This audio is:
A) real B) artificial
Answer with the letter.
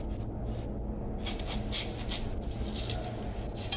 A